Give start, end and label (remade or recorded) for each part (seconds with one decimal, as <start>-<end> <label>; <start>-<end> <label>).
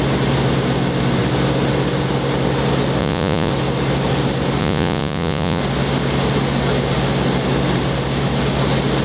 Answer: 0.0-3.0 recorded; 3.0-3.5 remade; 3.5-4.6 recorded; 4.6-5.6 remade; 5.6-9.0 recorded